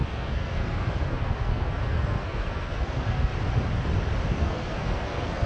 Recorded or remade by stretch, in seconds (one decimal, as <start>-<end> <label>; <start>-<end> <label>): 0.0-3.3 remade; 3.3-4.3 recorded; 4.3-5.5 remade